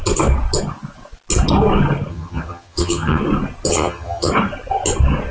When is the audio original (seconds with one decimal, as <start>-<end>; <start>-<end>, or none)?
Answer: 0.0-2.1; 3.2-3.7; 4.3-5.3